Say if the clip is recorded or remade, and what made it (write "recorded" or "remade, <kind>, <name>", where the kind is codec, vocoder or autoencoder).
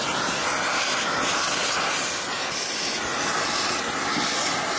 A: recorded